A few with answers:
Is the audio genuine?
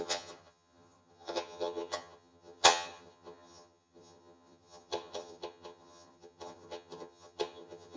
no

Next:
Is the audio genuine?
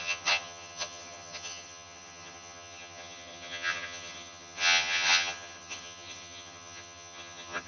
no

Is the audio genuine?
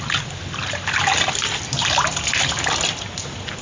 yes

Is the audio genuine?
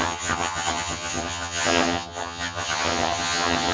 no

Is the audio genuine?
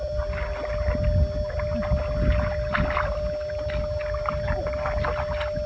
yes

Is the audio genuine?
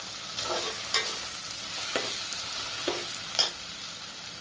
yes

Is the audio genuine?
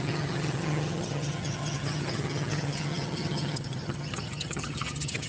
no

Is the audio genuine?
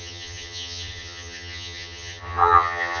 no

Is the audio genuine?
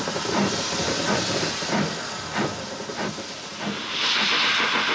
yes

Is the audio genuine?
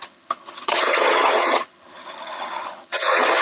no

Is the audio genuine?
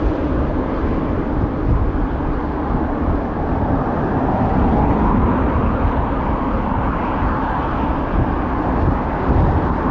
yes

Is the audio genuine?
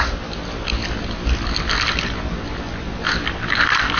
yes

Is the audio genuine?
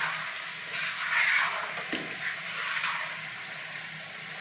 yes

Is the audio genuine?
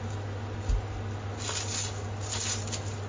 yes